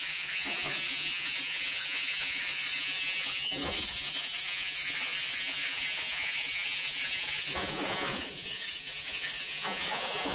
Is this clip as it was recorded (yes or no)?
no